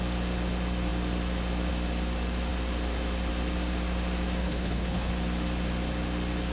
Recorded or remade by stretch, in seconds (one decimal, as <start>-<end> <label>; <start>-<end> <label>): 0.0-4.4 recorded; 4.4-5.1 remade; 5.1-6.5 recorded